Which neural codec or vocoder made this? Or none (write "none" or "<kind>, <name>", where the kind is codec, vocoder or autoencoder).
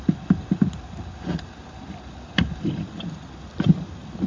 none